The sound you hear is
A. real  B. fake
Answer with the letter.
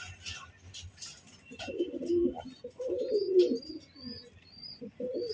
A